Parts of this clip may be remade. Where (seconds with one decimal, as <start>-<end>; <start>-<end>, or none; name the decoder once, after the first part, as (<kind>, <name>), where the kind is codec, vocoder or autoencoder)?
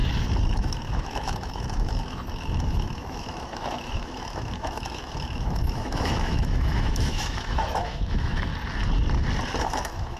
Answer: 0.6-8.5 (autoencoder, DAC-VAE); 9.6-10.2